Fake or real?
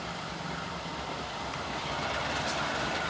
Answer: real